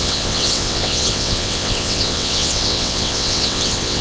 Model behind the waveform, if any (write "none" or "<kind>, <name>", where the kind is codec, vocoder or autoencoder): vocoder, WaveNeXt